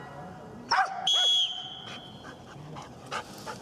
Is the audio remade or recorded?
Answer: recorded